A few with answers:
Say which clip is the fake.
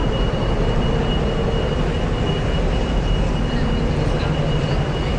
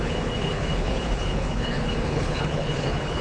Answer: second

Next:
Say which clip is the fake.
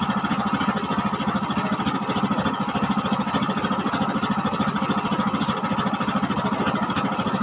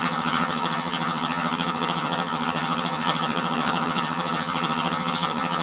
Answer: second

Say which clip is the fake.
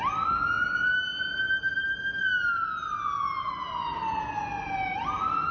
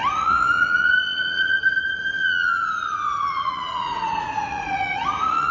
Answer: second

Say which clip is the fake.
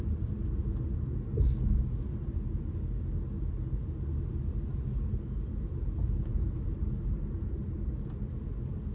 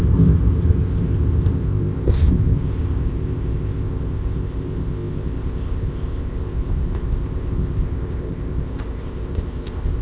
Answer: second